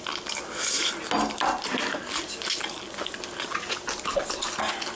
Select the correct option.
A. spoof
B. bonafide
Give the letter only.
B